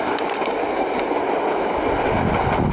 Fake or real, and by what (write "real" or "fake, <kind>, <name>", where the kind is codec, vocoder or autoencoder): fake, vocoder, BigVGAN v2